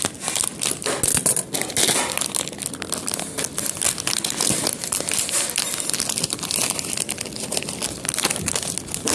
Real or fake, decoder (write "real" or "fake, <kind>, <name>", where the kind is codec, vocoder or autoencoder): real